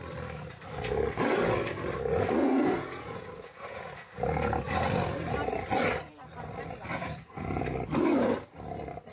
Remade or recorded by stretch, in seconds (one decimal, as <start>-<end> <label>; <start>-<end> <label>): 0.0-2.4 recorded; 2.4-4.1 remade; 4.1-6.9 recorded; 6.9-7.6 remade; 7.6-9.1 recorded